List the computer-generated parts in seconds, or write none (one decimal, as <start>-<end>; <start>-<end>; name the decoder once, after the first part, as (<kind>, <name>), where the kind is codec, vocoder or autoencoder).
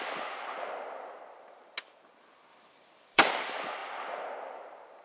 2.5-3.2 (vocoder, BigVGAN v2)